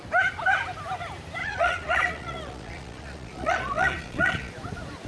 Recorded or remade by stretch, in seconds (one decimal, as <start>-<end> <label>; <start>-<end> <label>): 0.0-1.4 recorded; 1.4-4.5 remade; 4.5-5.1 recorded